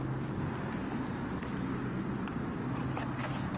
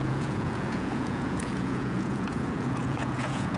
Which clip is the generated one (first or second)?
second